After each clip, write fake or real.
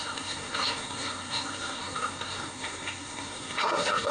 fake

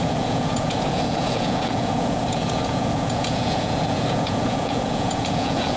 fake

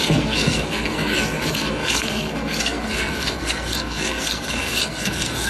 fake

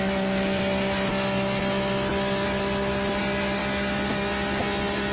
real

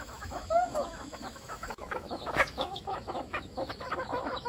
fake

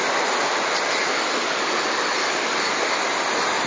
real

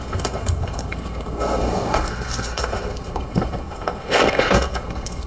fake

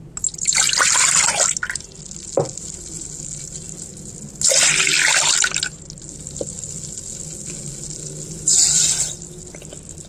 real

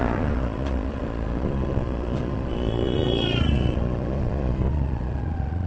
fake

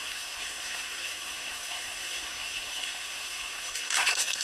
fake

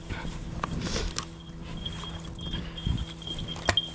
real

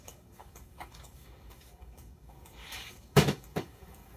fake